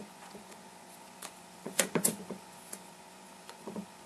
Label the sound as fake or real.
fake